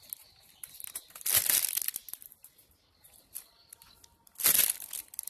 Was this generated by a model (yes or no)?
no